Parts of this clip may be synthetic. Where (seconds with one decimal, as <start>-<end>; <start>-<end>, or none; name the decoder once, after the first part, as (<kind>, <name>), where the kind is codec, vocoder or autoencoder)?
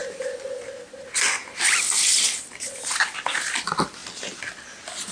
none